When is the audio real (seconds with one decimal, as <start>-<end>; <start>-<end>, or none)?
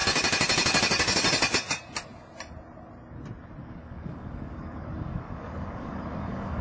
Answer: 0.0-3.6